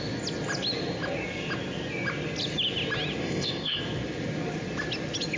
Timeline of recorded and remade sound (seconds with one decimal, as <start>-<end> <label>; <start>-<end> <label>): 0.0-3.2 recorded; 3.2-3.8 remade; 3.8-5.4 recorded